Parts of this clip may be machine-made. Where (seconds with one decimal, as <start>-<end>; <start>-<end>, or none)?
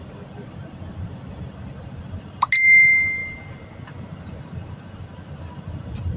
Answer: none